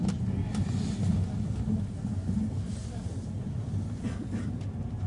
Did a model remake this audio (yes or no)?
no